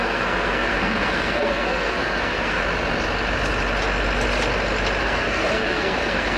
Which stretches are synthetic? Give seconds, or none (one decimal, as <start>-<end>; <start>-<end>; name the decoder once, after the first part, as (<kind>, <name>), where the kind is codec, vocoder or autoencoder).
0.0-2.6 (codec, SNAC); 5.0-6.4